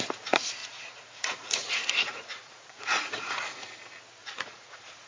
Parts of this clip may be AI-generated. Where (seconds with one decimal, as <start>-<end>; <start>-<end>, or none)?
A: 0.6-3.7; 4.2-5.1